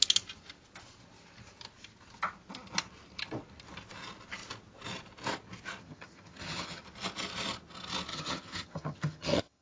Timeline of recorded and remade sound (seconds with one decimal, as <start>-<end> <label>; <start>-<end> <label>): 0.0-5.8 recorded; 5.8-6.8 remade; 6.8-8.1 recorded; 8.1-9.6 remade